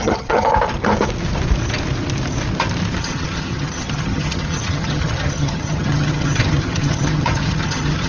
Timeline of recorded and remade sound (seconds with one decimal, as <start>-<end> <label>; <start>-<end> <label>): 0.0-0.5 remade; 0.5-3.0 recorded; 3.0-8.1 remade